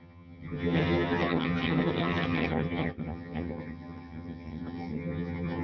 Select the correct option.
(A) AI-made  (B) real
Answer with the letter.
A